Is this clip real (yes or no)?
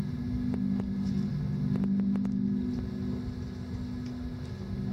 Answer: yes